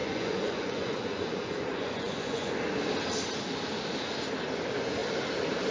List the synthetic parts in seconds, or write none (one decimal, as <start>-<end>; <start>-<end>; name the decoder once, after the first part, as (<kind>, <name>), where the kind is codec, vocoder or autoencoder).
0.0-2.5 (vocoder, Vocos)